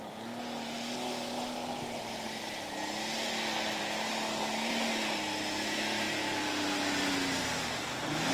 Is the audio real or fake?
fake